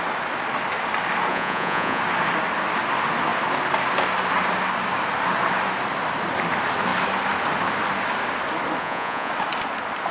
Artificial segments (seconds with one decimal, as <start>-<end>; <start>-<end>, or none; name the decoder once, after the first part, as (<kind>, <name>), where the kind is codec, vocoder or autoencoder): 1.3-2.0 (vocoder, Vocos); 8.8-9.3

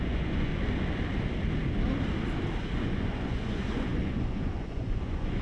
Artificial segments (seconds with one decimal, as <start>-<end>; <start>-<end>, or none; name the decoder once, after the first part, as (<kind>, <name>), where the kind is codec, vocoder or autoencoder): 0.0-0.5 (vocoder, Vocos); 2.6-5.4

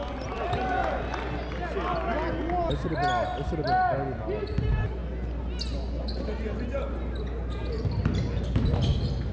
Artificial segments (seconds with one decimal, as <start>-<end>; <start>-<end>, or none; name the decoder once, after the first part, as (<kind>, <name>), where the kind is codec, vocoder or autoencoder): none

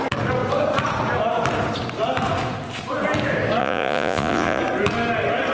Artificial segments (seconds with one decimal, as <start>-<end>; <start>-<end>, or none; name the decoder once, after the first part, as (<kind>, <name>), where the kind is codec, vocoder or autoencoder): 3.6-4.6 (vocoder, Vocos)

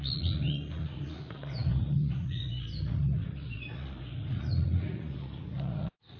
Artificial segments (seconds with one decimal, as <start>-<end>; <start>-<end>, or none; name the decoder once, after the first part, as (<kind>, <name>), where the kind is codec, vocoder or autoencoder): 0.0-6.2 (vocoder, Vocos)